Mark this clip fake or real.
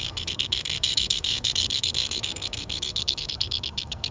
fake